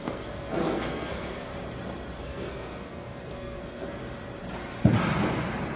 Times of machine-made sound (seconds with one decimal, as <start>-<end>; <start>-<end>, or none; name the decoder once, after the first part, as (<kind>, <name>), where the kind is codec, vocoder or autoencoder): 0.0-1.5 (codec, SNAC); 2.2-4.0